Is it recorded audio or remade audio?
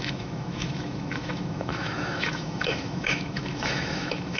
remade